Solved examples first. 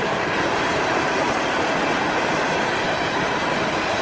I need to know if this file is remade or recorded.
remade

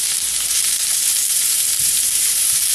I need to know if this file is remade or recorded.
remade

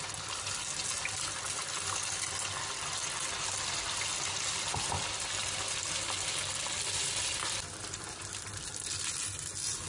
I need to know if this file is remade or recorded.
recorded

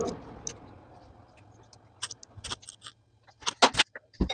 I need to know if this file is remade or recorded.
recorded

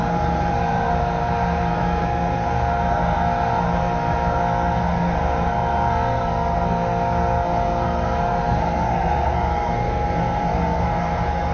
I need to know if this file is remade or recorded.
remade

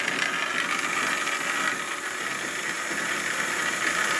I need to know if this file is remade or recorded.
recorded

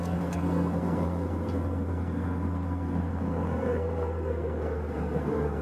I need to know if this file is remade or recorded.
remade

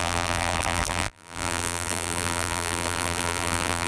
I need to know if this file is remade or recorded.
remade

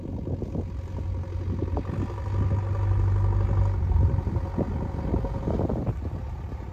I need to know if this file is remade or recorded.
recorded